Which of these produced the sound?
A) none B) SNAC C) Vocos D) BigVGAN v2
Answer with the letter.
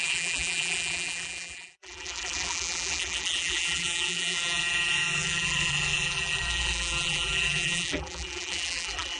D